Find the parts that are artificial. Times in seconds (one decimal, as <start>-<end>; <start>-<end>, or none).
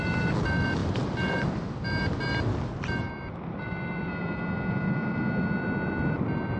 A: none